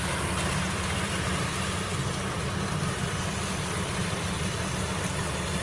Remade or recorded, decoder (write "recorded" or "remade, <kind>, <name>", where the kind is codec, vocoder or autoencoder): recorded